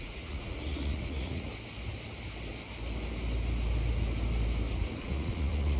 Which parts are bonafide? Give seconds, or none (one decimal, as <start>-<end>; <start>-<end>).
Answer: 1.5-5.0